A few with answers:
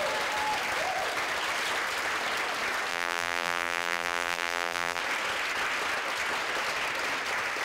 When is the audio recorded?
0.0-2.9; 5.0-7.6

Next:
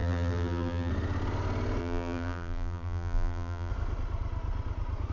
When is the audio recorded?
0.9-1.8; 3.7-5.1

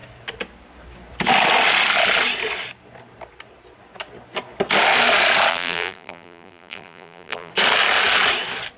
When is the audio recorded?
0.0-5.5; 7.5-8.8

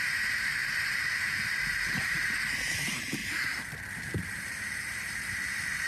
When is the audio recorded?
3.2-4.3